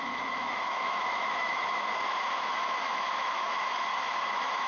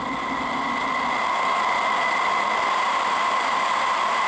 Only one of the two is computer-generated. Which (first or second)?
first